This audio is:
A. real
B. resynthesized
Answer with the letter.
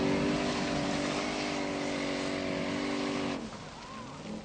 A